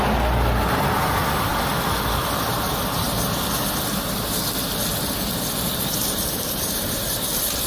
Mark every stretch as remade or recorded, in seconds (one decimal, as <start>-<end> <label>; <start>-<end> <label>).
0.0-7.7 recorded